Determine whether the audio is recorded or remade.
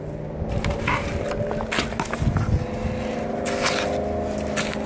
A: recorded